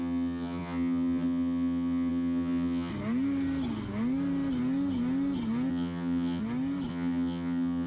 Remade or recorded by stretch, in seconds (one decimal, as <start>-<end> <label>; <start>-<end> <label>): 0.0-2.9 remade; 2.9-5.7 recorded; 5.7-6.4 remade; 6.4-6.9 recorded; 6.9-7.9 remade